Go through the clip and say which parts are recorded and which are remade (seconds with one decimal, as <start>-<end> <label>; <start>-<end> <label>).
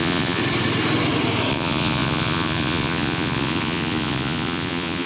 0.0-0.4 remade; 0.4-1.5 recorded; 1.5-5.1 remade